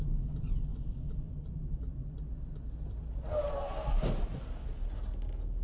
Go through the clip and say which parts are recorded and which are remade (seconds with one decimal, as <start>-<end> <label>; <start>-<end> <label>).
0.0-5.6 recorded